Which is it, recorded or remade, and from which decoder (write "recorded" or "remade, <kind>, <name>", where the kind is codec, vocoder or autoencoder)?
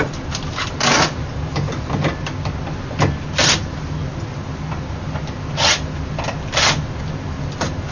recorded